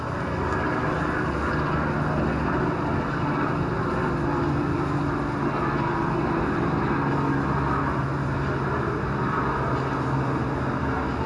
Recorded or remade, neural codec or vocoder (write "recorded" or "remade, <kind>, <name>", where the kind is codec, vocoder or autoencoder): recorded